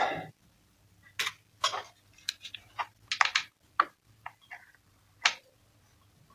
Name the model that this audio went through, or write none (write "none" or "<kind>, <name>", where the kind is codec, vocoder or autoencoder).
none